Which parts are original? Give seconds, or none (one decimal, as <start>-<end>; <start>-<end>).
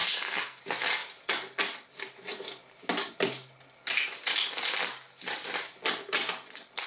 0.6-6.9